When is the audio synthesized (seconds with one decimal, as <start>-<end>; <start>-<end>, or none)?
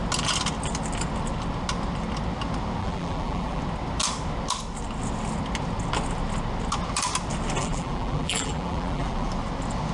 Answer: 2.8-3.6; 7.6-9.3